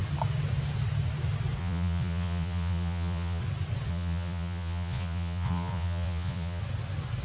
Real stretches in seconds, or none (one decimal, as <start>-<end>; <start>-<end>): 0.0-1.6; 3.4-3.9; 6.6-7.2